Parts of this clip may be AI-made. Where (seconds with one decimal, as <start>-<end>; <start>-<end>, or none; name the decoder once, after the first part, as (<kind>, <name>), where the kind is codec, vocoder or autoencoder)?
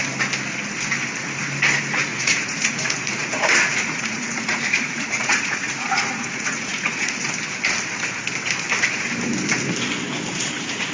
2.1-7.3 (vocoder, Vocos)